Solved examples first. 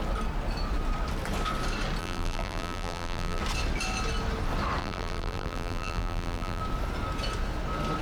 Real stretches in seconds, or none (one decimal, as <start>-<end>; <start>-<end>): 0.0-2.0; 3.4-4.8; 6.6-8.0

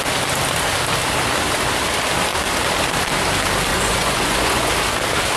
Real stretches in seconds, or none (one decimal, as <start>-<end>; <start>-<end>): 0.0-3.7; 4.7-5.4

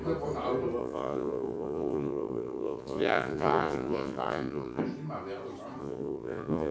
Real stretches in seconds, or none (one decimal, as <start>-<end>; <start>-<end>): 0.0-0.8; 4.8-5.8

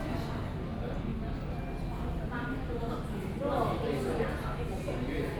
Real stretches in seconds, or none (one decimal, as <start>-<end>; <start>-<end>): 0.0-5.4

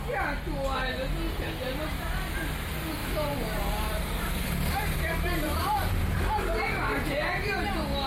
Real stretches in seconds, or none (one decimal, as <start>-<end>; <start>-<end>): 0.0-3.0; 6.2-8.1

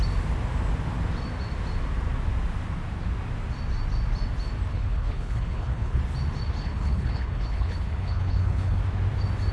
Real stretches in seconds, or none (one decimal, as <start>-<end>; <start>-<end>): 0.0-4.7; 6.0-6.6; 8.8-9.5

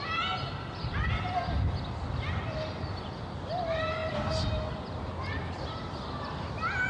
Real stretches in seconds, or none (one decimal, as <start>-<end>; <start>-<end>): 0.0-6.9

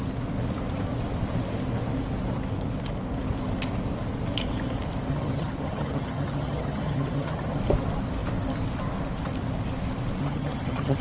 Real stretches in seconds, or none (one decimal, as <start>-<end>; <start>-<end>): 0.0-5.1; 7.6-10.2